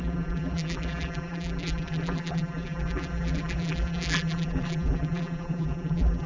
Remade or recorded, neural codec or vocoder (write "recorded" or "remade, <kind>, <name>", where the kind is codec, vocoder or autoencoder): remade, vocoder, BigVGAN v2